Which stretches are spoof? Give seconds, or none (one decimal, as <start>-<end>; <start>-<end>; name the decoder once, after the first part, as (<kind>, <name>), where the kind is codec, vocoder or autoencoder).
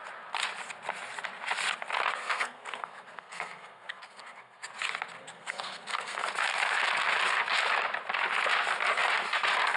2.2-4.7 (codec, SNAC); 5.2-6.3